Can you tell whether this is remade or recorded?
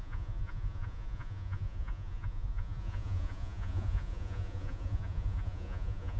remade